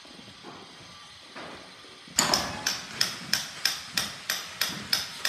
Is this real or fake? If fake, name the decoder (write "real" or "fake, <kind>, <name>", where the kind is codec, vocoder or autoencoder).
real